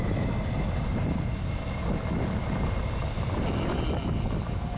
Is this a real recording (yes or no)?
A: yes